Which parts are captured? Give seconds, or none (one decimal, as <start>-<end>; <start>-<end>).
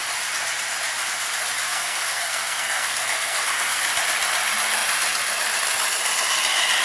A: 0.0-1.6; 3.8-6.8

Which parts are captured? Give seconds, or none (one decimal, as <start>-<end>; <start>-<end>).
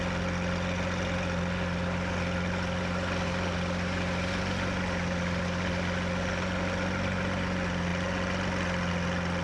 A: 0.0-9.4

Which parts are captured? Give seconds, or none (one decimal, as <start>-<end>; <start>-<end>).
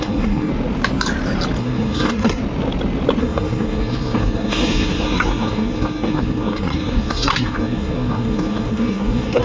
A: 0.5-1.6; 2.4-3.2